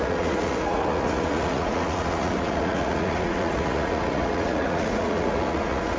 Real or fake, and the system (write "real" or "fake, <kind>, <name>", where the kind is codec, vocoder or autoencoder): fake, vocoder, Vocos